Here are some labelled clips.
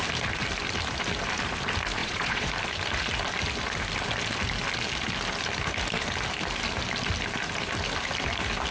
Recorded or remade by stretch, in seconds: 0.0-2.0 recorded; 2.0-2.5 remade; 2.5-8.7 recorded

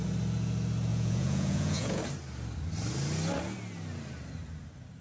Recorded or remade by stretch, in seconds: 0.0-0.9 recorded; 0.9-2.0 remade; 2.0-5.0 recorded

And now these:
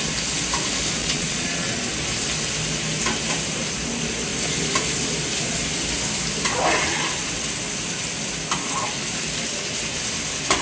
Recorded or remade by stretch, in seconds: 0.0-1.0 recorded; 1.0-1.8 remade; 1.8-10.6 recorded

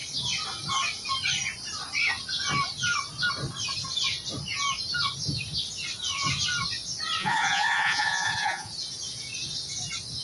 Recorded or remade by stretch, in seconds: 0.0-7.2 recorded; 7.2-8.7 remade; 8.7-10.2 recorded

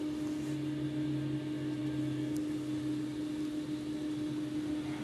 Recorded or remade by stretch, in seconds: 0.0-5.0 recorded

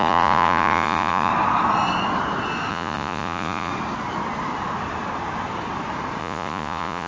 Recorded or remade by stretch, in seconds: 0.0-1.3 remade; 1.3-2.7 recorded; 2.7-3.7 remade; 3.7-6.2 recorded; 6.2-7.1 remade

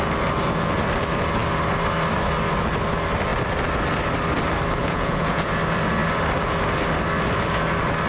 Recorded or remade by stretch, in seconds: 0.0-4.8 recorded; 4.8-5.5 remade; 5.5-8.1 recorded